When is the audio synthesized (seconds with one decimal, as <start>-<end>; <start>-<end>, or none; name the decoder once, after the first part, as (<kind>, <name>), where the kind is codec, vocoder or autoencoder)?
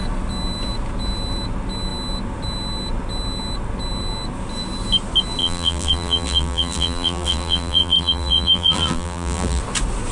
5.4-9.6 (vocoder, BigVGAN v2)